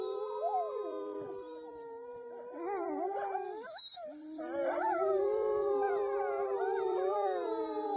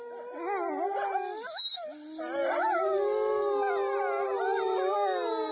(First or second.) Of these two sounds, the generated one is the first